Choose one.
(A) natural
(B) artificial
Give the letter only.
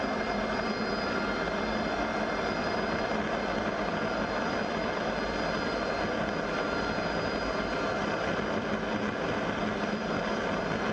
A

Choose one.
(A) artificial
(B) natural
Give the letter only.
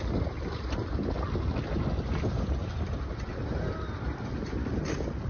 B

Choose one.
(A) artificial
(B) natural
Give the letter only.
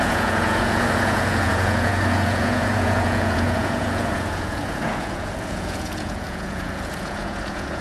A